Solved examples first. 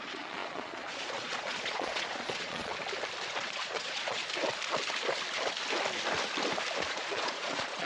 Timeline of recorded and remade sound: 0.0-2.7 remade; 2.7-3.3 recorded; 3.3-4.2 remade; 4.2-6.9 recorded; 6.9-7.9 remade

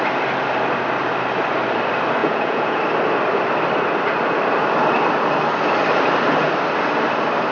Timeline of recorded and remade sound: 0.0-2.2 recorded; 2.2-2.8 remade; 2.8-7.5 recorded

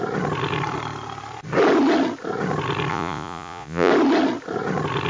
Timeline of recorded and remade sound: 0.0-2.9 recorded; 2.9-3.9 remade; 3.9-5.1 recorded

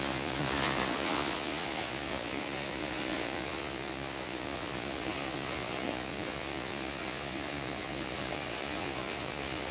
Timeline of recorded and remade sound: 0.0-9.7 remade

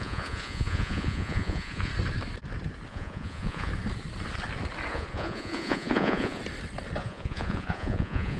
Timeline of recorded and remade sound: 0.0-1.9 remade; 1.9-2.9 recorded; 2.9-3.7 remade; 3.7-4.9 recorded; 4.9-6.4 remade; 6.4-7.0 recorded; 7.0-8.4 remade

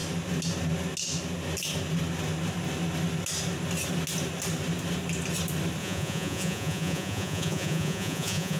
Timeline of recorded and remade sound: 0.0-5.8 recorded; 5.8-8.6 remade

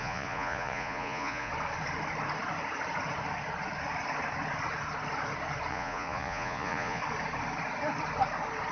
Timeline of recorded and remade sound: 0.0-1.5 remade; 1.5-5.7 recorded; 5.7-7.0 remade; 7.0-8.7 recorded

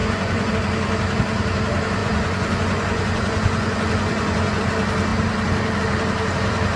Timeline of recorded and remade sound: 0.0-0.5 remade; 0.5-2.0 recorded; 2.0-4.6 remade; 4.6-6.8 recorded